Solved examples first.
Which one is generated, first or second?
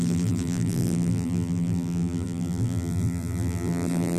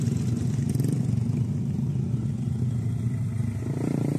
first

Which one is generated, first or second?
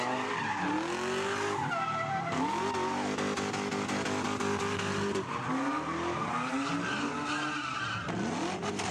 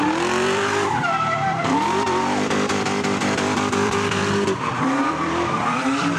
second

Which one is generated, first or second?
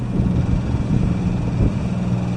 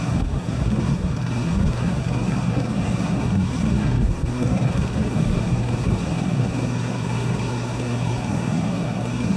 second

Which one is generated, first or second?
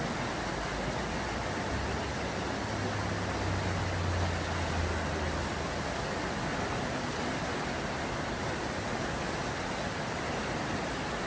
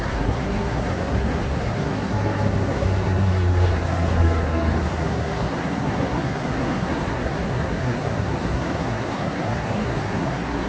second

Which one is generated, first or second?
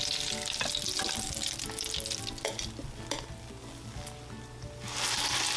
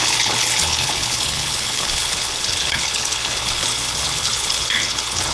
second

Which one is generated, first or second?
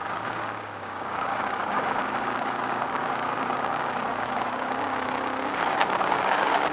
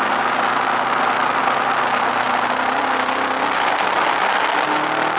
first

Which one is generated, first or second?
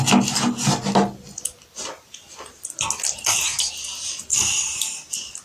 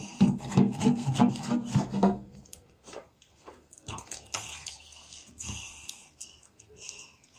second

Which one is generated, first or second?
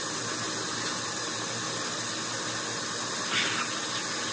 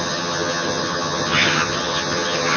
second